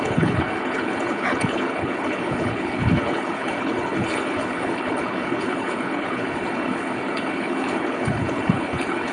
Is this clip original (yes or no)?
no